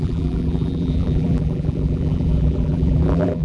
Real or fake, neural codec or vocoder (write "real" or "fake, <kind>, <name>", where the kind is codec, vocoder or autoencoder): fake, vocoder, BigVGAN v2